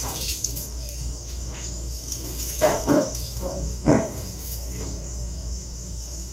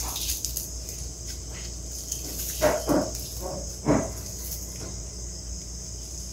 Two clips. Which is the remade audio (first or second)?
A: first